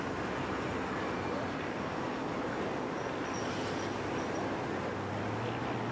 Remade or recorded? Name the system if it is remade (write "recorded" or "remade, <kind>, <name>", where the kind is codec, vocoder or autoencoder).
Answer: recorded